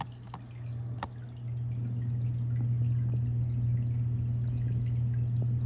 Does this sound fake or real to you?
real